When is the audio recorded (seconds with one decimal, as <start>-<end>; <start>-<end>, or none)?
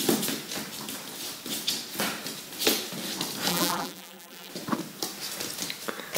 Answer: 0.0-3.5; 4.5-6.2